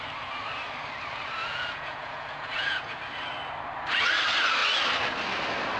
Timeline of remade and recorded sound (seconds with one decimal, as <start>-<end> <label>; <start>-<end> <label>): 0.0-1.4 recorded; 1.4-3.0 remade; 3.0-5.8 recorded